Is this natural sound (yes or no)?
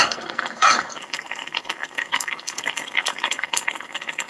no